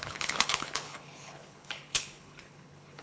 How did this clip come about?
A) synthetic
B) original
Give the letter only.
A